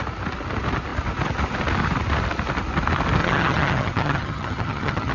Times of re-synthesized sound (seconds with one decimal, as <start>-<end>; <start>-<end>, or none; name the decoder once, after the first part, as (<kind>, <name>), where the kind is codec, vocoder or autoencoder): 3.2-5.1 (vocoder, HiFi-GAN)

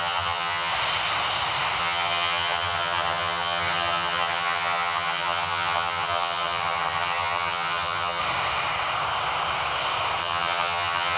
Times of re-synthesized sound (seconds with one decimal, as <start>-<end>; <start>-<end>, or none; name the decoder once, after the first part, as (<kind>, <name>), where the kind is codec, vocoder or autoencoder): 0.0-0.7 (vocoder, HiFi-GAN); 1.8-8.2; 10.2-11.2

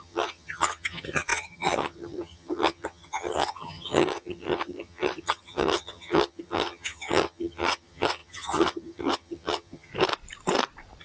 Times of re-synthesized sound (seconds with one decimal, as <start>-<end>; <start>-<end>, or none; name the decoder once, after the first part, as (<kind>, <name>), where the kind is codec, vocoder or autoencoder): 0.0-9.9 (vocoder, HiFi-GAN)

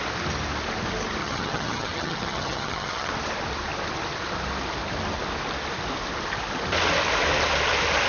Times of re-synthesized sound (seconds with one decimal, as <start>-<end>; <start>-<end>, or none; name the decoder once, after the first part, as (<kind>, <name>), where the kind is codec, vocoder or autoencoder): 1.2-3.1 (vocoder, HiFi-GAN)

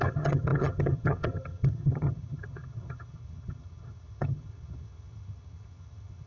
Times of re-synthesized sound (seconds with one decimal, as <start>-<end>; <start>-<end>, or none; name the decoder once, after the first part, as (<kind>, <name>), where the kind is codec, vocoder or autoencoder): 0.0-6.3 (vocoder, HiFi-GAN)

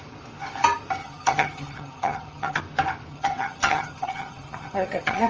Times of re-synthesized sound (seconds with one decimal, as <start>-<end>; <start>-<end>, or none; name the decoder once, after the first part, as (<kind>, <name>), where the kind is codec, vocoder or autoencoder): 1.0-2.6 (vocoder, HiFi-GAN); 3.1-5.3